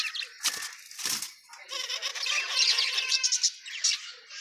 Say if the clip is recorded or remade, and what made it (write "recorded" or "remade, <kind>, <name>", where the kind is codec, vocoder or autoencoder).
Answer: recorded